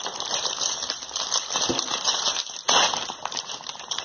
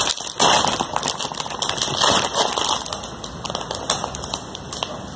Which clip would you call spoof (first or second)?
first